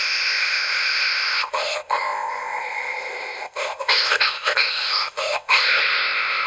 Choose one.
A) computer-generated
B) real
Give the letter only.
A